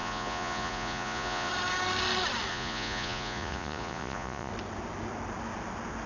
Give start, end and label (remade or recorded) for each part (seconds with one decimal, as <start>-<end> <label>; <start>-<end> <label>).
0.0-1.5 remade; 1.5-2.5 recorded; 2.5-4.5 remade; 4.5-6.1 recorded